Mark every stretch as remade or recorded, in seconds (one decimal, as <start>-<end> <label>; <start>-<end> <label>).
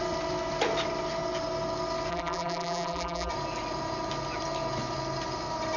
0.0-2.1 recorded; 2.1-3.3 remade; 3.3-5.8 recorded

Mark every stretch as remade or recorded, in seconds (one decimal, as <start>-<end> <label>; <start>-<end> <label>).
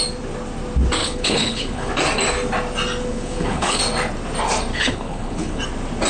0.0-1.0 recorded; 1.0-1.9 remade; 1.9-3.1 recorded; 3.1-3.8 remade; 3.8-4.7 recorded; 4.7-5.6 remade; 5.6-6.1 recorded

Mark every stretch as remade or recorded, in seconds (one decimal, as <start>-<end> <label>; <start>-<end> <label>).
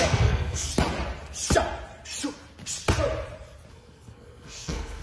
0.0-0.7 remade; 0.7-3.7 recorded; 3.7-5.0 remade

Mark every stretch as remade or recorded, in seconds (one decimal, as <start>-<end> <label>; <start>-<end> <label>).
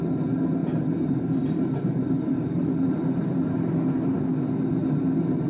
0.0-0.6 recorded; 0.6-3.7 remade; 3.7-5.5 recorded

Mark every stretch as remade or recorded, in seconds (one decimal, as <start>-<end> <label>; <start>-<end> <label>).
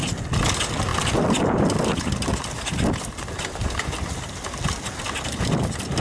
0.0-6.0 recorded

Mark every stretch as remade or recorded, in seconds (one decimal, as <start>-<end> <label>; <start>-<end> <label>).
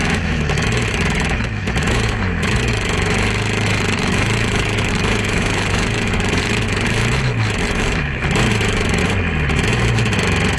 0.0-9.0 remade; 9.0-10.6 recorded